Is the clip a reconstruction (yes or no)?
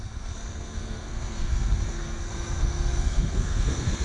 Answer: yes